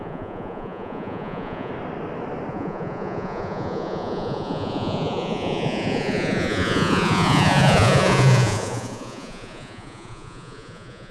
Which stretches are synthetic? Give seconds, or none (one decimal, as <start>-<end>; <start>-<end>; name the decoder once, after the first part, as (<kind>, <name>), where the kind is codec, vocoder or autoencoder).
0.0-1.7 (vocoder, Vocos); 2.5-11.1